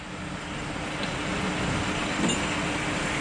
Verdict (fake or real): real